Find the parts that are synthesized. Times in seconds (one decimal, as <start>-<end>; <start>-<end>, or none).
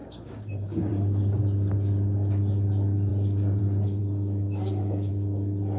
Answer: 0.0-0.9; 4.0-5.1